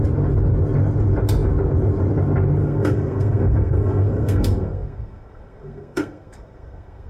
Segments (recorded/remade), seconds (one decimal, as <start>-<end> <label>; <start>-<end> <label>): 0.0-2.6 recorded; 2.6-7.1 remade